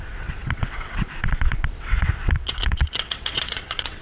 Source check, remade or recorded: remade